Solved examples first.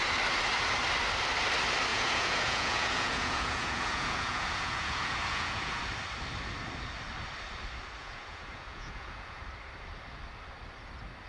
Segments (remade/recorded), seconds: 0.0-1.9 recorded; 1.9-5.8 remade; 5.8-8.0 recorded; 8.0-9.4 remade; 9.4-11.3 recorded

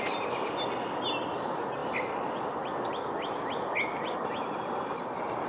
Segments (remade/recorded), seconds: 0.0-5.5 recorded

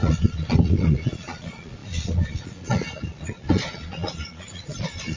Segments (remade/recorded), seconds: 0.0-5.2 remade

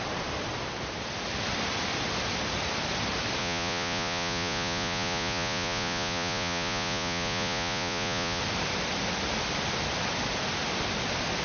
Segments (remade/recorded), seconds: 0.0-3.4 recorded; 3.4-8.4 remade; 8.4-11.4 recorded

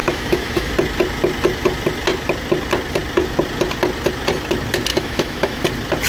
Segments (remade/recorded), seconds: 0.0-0.7 remade; 0.7-4.9 recorded; 4.9-5.6 remade; 5.6-6.1 recorded

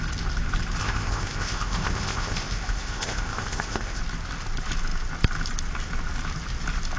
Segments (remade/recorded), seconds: 0.0-0.8 recorded; 0.8-4.0 remade; 4.0-7.0 recorded

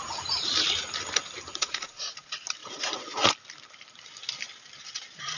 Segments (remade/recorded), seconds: 0.0-1.5 recorded; 1.5-2.1 remade; 2.1-2.6 recorded; 2.6-3.3 remade; 3.3-5.4 recorded

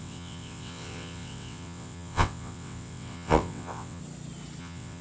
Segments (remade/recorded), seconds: 0.0-4.0 remade; 4.0-4.6 recorded; 4.6-5.0 remade